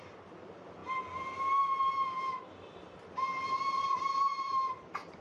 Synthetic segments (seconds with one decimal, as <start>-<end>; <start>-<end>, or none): 0.0-0.8; 3.8-4.3